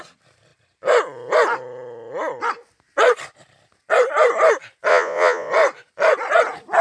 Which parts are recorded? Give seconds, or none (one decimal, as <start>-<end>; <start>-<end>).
0.0-4.9; 5.5-6.8